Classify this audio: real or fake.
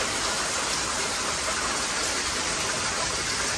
real